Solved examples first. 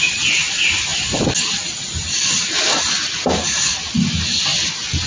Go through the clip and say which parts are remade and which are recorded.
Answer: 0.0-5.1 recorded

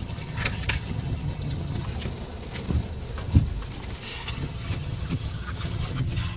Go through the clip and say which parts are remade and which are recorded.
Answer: 0.0-1.9 remade; 1.9-4.3 recorded; 4.3-6.4 remade

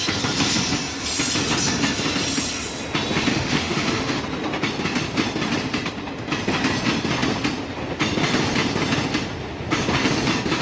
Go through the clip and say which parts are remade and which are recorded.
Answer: 0.0-3.3 recorded; 3.3-4.2 remade; 4.2-10.6 recorded

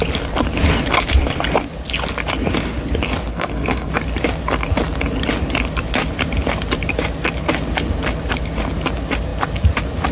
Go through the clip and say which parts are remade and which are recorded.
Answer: 0.0-3.3 recorded; 3.3-3.9 remade; 3.9-10.1 recorded

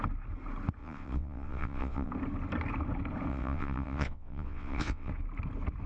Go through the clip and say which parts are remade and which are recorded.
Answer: 0.0-0.8 recorded; 0.8-2.1 remade; 2.1-3.3 recorded; 3.3-5.1 remade; 5.1-5.9 recorded

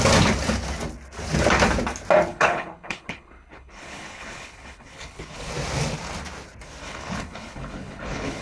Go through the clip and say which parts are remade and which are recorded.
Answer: 0.0-2.3 recorded; 2.3-5.5 remade; 5.5-6.8 recorded; 6.8-8.4 remade

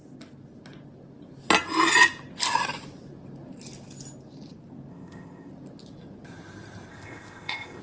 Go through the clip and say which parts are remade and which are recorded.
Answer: 0.0-4.9 recorded; 4.9-5.5 remade; 5.5-6.9 recorded; 6.9-7.8 remade